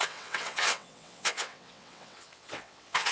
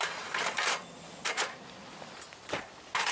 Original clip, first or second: second